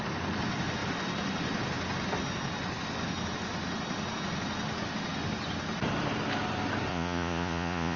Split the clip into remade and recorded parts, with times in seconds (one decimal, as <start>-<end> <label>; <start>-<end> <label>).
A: 0.0-6.9 recorded; 6.9-8.0 remade